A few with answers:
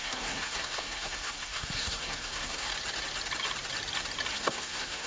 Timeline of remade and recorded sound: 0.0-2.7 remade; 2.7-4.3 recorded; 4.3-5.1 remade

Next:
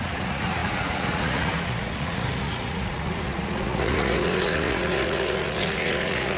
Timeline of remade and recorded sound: 0.0-6.4 remade

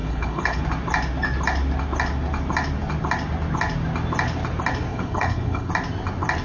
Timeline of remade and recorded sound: 0.0-0.6 remade; 0.6-4.9 recorded; 4.9-5.7 remade; 5.7-6.4 recorded